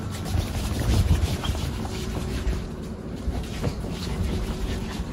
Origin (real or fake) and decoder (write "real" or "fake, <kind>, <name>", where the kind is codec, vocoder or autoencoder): fake, vocoder, BigVGAN v2